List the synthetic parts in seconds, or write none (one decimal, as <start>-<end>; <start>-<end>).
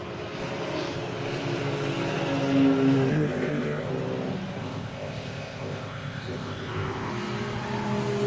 3.1-3.9; 4.6-7.1